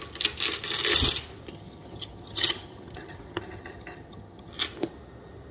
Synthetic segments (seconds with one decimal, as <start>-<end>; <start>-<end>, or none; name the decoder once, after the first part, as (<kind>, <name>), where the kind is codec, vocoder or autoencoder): 1.5-4.5 (vocoder, HiFi-GAN)